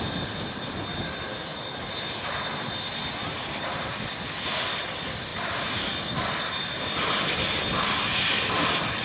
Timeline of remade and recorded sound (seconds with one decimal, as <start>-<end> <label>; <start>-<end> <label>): 0.0-9.0 recorded

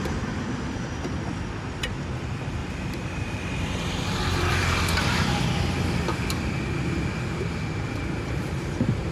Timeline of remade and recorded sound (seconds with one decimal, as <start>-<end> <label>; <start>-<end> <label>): 0.0-9.1 remade

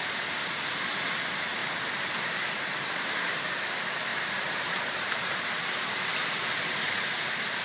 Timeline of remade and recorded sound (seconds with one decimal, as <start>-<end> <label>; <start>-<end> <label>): 0.0-1.6 recorded; 1.6-3.1 remade; 3.1-4.1 recorded; 4.1-5.4 remade; 5.4-7.6 recorded

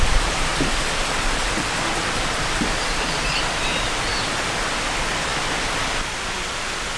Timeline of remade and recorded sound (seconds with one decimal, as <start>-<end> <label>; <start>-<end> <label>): 0.0-5.3 remade; 5.3-7.0 recorded

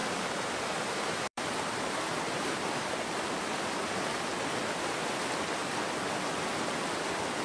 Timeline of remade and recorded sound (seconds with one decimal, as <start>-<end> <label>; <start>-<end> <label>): 0.0-2.9 remade; 2.9-7.4 recorded

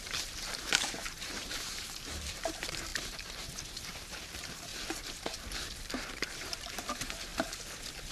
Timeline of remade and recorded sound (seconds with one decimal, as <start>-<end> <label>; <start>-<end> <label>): 0.0-2.9 remade; 2.9-3.7 recorded; 3.7-4.7 remade; 4.7-6.3 recorded; 6.3-7.3 remade; 7.3-8.1 recorded